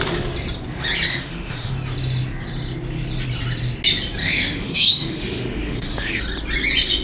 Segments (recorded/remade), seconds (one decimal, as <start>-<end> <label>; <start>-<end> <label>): 0.0-1.1 recorded; 1.1-1.7 remade; 1.7-4.2 recorded; 4.2-6.2 remade; 6.2-7.0 recorded